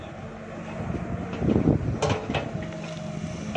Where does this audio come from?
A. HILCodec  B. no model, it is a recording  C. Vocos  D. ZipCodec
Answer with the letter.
B